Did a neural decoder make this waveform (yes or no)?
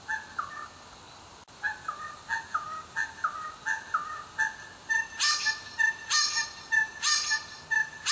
no